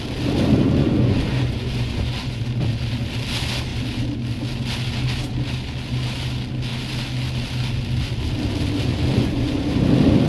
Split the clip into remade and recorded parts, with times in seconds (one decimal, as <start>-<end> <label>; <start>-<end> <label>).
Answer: 0.0-0.8 recorded; 0.8-2.4 remade; 2.4-8.9 recorded; 8.9-9.8 remade; 9.8-10.3 recorded